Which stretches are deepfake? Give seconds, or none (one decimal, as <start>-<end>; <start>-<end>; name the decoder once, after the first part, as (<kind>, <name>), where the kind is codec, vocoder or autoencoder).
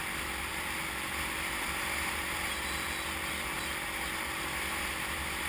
none